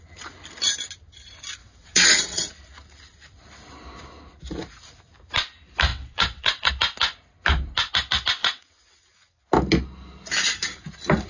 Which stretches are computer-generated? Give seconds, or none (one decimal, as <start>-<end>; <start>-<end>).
1.6-2.4; 5.9-6.7; 8.4-9.4